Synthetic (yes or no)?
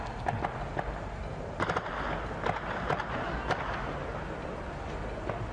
no